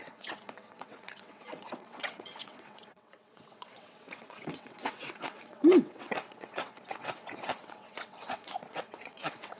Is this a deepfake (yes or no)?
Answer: yes